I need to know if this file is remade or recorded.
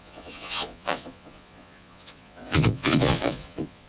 remade